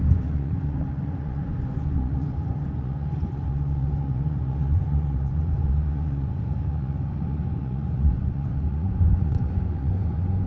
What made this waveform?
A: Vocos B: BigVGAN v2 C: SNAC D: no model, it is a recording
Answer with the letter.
A